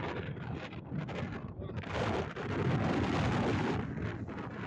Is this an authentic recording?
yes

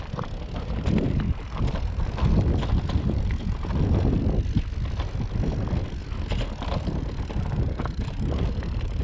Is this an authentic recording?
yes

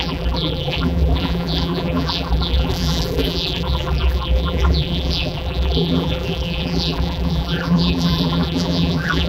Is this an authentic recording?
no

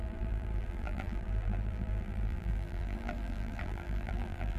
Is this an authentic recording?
no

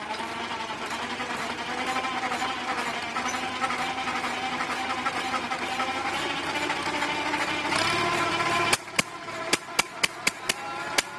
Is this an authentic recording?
yes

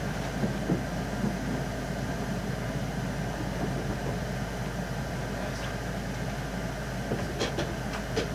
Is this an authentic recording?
yes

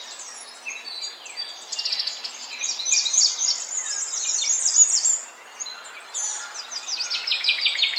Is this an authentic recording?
yes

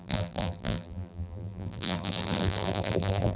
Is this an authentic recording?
no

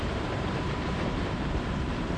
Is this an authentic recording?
no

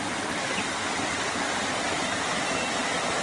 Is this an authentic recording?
yes